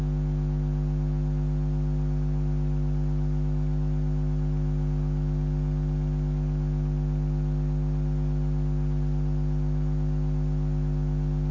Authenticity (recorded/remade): recorded